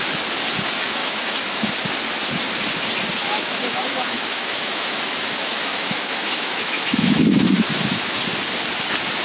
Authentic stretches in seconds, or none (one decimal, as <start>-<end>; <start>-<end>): 0.0-1.0; 1.7-3.2; 8.2-9.2